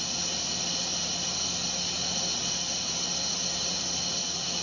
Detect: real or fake real